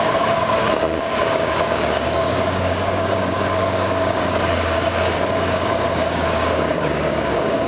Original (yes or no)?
no